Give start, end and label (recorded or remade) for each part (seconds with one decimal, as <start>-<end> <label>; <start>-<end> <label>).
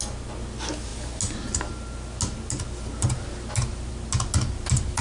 0.0-5.0 recorded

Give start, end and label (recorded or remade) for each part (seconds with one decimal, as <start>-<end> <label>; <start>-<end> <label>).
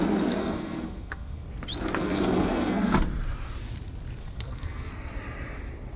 0.0-0.4 recorded; 0.4-1.5 remade; 1.5-2.0 recorded; 2.0-3.0 remade; 3.0-4.2 recorded; 4.2-4.9 remade; 4.9-6.0 recorded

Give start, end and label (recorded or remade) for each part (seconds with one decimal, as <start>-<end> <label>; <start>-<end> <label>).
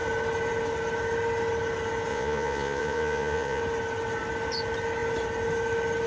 0.0-2.1 recorded; 2.1-3.6 remade; 3.6-6.1 recorded